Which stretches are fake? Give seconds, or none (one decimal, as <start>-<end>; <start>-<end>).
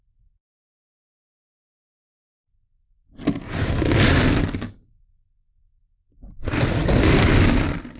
none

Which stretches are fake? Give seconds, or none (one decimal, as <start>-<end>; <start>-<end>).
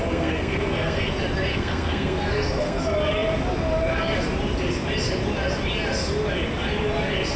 0.0-1.1; 1.5-2.8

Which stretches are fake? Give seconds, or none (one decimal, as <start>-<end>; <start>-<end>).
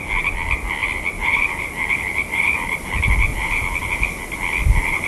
0.8-3.1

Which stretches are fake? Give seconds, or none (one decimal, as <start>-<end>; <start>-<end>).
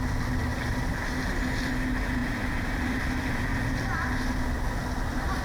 2.2-2.8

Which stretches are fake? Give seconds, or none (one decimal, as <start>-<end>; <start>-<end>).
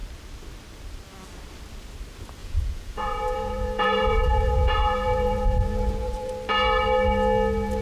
2.4-6.3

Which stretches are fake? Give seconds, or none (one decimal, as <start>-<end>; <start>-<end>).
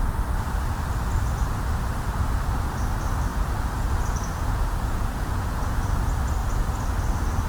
3.3-5.8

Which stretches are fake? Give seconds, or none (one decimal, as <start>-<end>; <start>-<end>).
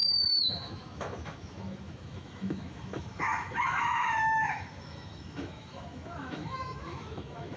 0.0-7.6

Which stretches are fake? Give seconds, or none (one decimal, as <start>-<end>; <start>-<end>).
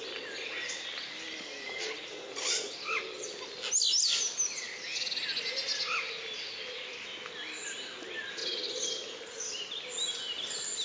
none